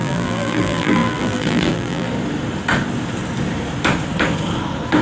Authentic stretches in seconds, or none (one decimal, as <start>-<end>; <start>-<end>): 2.1-5.0